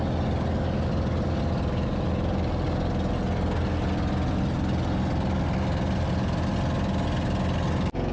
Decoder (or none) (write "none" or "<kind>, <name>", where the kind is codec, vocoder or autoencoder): none